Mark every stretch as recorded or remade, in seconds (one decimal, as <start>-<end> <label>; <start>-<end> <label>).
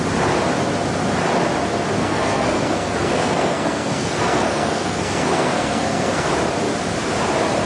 0.0-2.0 recorded; 2.0-6.3 remade; 6.3-7.7 recorded